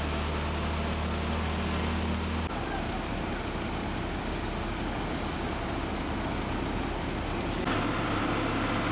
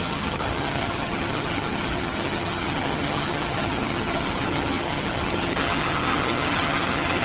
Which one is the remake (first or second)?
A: second